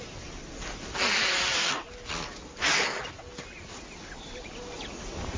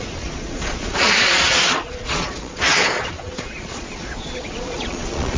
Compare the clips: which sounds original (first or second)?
first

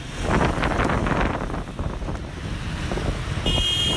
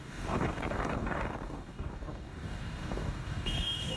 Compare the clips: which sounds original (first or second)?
first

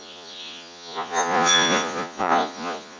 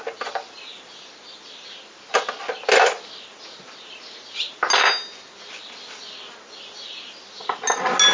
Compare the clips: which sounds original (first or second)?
second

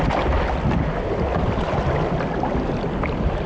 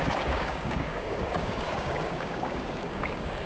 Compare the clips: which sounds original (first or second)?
first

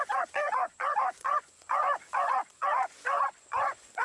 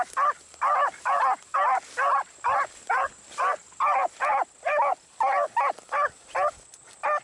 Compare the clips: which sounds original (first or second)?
second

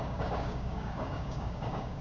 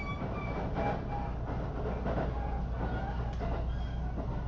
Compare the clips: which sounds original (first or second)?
second